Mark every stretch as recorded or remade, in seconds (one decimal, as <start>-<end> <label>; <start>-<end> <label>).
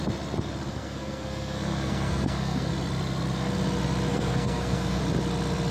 0.0-0.7 recorded; 0.7-2.7 remade; 2.7-4.1 recorded; 4.1-5.0 remade; 5.0-5.7 recorded